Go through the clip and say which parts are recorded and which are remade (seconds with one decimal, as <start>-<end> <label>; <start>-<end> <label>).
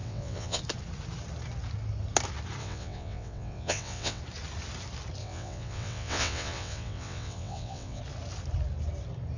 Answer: 0.0-0.6 remade; 0.6-2.6 recorded; 2.6-4.2 remade; 4.2-5.2 recorded; 5.2-8.0 remade; 8.0-9.4 recorded